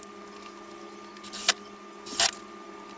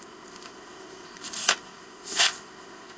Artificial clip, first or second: second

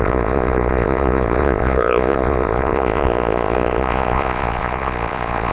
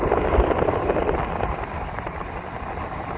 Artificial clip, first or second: first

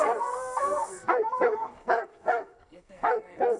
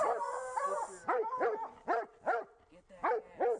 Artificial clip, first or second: first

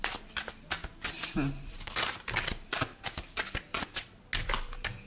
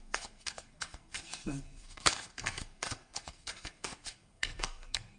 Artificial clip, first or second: second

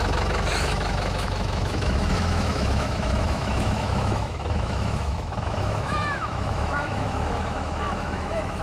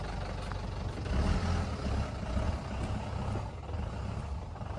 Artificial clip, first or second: first